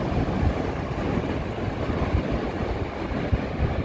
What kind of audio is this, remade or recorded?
recorded